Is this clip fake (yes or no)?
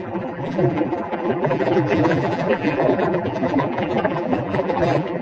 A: yes